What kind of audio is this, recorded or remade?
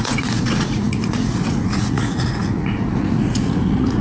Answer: remade